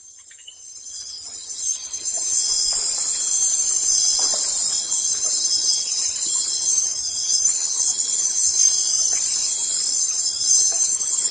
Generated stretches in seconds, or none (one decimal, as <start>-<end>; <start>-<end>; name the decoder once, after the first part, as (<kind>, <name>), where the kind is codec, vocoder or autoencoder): 0.0-2.4 (vocoder, HiFi-GAN); 4.8-8.5; 10.0-11.3